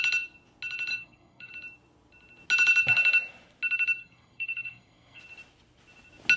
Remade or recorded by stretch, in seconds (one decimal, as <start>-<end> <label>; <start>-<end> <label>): 0.0-0.9 recorded; 0.9-1.5 remade; 1.5-4.0 recorded; 4.0-5.2 remade; 5.2-6.4 recorded